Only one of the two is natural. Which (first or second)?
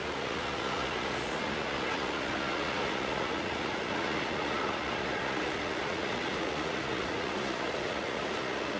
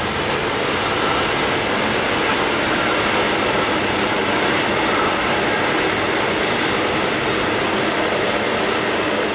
second